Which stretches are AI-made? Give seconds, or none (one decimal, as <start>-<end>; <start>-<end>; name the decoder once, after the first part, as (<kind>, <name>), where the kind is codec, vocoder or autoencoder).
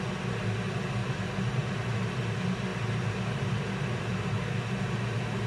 1.0-1.7 (vocoder, BigVGAN v2)